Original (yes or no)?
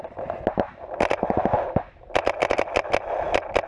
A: yes